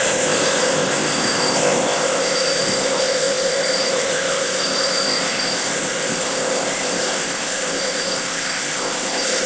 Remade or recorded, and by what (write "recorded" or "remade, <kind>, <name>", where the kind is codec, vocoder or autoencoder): remade, codec, ZipCodec